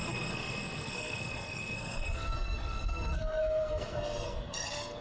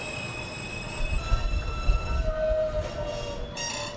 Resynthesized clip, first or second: first